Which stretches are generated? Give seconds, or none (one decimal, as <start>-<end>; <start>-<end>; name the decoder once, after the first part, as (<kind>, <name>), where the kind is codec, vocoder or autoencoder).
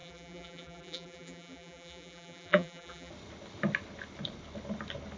0.0-3.1 (vocoder, BigVGAN v2)